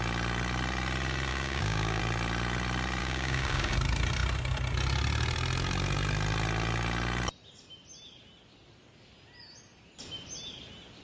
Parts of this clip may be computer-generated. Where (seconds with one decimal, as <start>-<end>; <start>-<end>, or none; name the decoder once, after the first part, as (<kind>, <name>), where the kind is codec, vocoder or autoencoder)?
1.3-2.0 (codec, DAC); 3.0-3.7